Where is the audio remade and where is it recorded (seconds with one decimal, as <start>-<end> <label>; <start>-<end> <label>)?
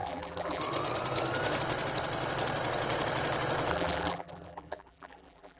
0.0-0.6 remade; 0.6-3.7 recorded; 3.7-5.6 remade